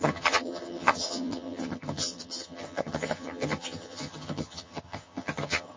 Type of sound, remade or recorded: remade